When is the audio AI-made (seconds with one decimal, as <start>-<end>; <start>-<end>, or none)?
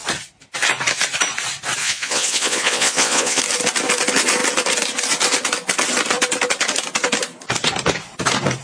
1.8-3.4